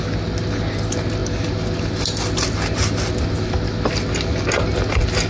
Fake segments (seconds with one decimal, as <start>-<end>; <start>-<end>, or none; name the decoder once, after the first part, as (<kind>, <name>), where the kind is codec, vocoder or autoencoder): none